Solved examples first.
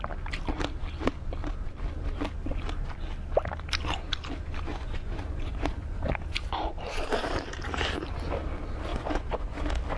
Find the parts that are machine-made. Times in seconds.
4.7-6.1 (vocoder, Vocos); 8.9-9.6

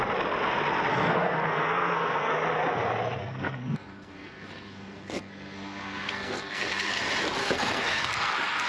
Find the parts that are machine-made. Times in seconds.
0.9-2.3 (codec, SNAC); 3.2-7.0; 7.4-8.7

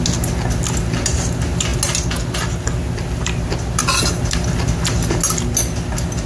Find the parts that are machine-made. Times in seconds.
none

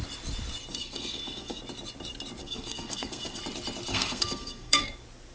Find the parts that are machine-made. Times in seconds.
0.7-1.6 (codec, SNAC); 2.4-3.4; 3.9-4.8

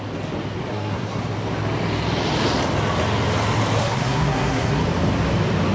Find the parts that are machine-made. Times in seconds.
0.7-1.2 (codec, SNAC); 3.8-4.8

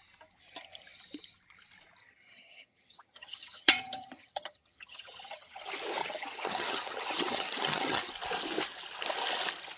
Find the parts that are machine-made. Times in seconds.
2.0-5.6 (vocoder, HiFi-GAN); 6.0-8.1

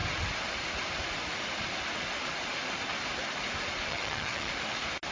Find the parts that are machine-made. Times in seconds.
3.9-4.5 (vocoder, HiFi-GAN)